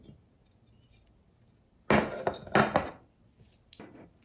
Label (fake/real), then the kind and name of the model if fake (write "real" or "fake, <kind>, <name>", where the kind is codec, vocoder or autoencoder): real